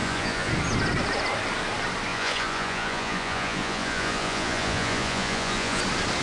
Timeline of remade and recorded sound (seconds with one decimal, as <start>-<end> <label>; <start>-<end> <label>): 0.0-0.5 remade; 0.5-2.1 recorded; 2.1-5.8 remade; 5.8-6.2 recorded